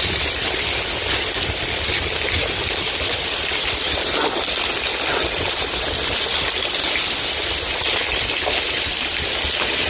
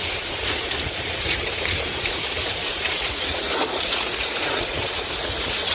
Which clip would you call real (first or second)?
first